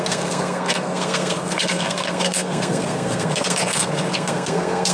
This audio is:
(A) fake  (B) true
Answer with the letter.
A